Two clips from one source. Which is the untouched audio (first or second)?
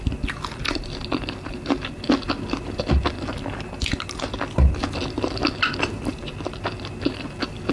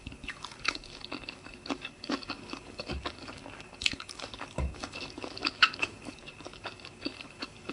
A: first